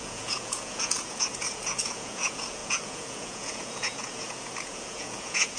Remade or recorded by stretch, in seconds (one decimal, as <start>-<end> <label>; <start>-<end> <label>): 0.0-5.6 remade